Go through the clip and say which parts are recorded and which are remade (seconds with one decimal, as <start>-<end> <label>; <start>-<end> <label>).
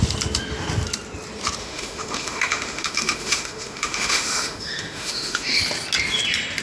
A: 0.0-1.6 recorded; 1.6-5.6 remade; 5.6-6.6 recorded